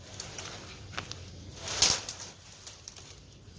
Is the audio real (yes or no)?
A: yes